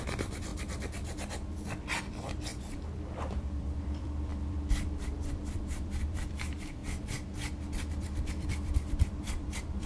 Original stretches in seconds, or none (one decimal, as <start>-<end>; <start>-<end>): 0.5-2.1; 4.3-5.3; 6.8-7.9